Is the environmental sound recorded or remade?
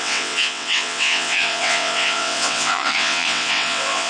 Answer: remade